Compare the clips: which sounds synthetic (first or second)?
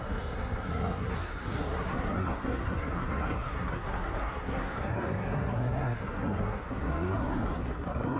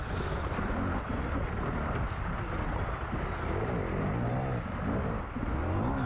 first